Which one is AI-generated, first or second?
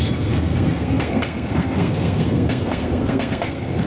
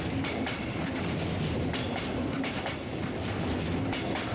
first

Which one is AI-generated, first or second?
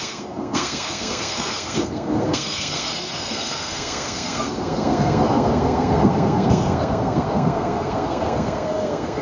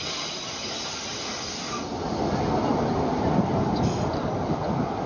first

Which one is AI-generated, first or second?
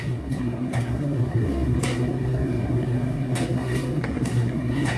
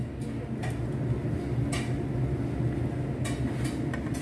first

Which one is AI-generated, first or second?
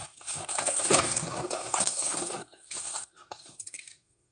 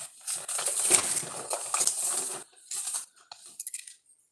first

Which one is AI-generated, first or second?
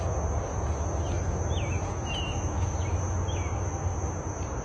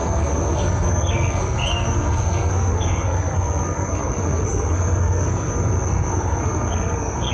second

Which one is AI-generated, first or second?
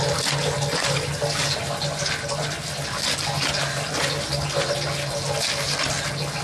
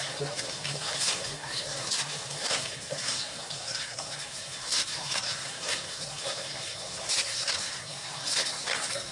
second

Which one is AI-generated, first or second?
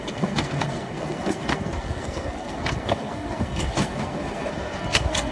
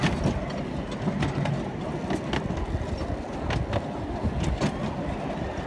first